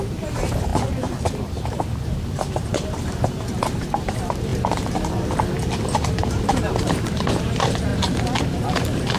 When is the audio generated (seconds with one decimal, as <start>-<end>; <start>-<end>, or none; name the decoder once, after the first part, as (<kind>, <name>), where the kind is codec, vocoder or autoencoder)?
0.0-0.7 (vocoder, BigVGAN v2); 1.3-7.9; 8.4-9.2